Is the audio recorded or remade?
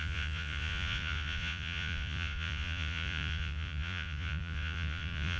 remade